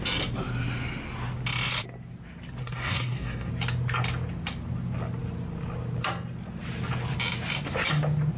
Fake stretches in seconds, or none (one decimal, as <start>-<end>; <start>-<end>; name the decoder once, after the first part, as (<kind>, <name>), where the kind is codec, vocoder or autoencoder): 2.6-3.5 (codec, SNAC)